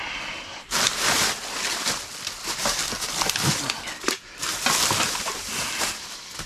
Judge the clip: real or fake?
fake